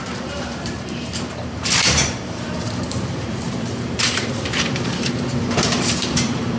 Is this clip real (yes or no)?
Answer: no